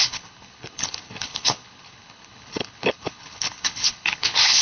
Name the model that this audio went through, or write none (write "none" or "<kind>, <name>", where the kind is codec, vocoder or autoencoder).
codec, HILCodec